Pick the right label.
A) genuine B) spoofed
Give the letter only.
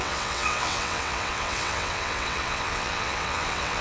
B